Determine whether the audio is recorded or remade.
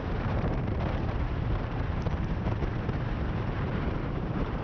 remade